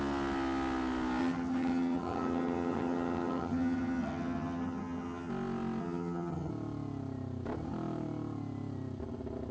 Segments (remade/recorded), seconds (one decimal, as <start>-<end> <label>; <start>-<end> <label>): 0.0-1.2 recorded; 1.2-5.3 remade; 5.3-5.8 recorded; 5.8-6.5 remade; 6.5-9.5 recorded